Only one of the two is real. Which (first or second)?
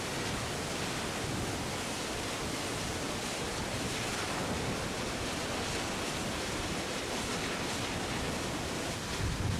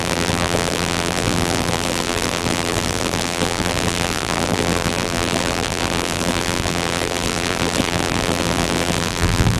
first